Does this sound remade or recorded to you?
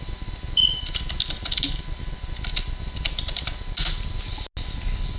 recorded